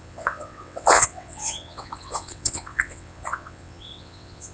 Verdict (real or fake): fake